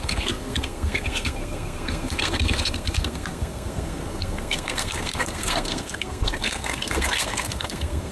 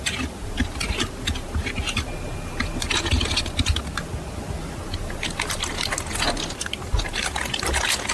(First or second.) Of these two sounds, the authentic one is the second